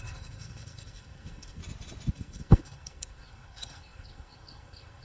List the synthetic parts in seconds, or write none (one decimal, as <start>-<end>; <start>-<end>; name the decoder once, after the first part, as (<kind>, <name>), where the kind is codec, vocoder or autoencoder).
0.0-1.6 (codec, SNAC); 2.1-5.0